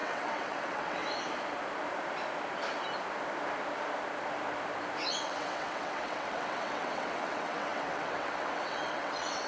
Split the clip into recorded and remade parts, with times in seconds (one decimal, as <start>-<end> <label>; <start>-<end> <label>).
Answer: 0.0-1.0 remade; 1.0-5.0 recorded; 5.0-9.5 remade